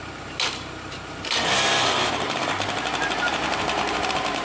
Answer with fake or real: fake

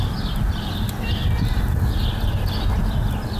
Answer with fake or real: real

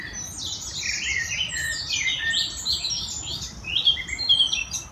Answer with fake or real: real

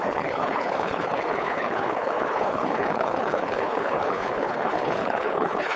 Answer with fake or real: fake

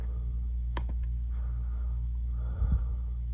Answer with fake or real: fake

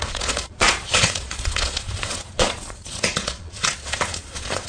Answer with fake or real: fake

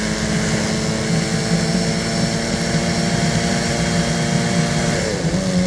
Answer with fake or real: real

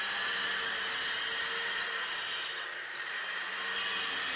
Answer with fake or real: real